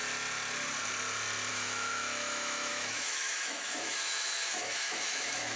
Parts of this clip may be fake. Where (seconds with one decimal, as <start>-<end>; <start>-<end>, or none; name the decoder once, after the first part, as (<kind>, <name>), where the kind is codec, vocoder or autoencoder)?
1.5-5.6 (autoencoder, DAC-VAE)